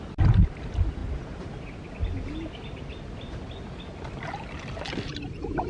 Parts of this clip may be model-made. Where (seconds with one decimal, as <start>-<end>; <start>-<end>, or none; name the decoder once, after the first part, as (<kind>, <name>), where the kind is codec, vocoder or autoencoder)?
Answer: none